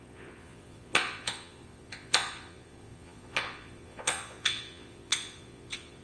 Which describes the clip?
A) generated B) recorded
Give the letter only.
A